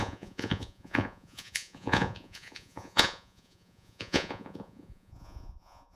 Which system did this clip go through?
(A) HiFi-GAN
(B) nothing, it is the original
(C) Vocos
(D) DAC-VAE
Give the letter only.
C